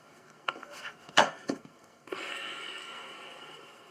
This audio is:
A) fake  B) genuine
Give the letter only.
A